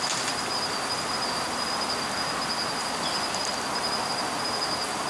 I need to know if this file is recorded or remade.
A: recorded